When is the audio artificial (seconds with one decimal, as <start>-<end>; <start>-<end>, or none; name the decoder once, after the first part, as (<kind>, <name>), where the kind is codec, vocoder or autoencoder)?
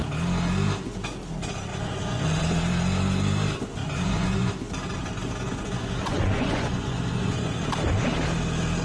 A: 1.7-2.4 (vocoder, Vocos); 3.8-4.5; 5.0-7.6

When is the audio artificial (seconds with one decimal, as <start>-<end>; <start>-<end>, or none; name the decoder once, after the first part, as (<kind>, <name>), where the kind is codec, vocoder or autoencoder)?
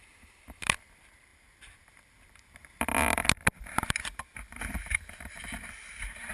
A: 0.0-6.3 (vocoder, BigVGAN v2)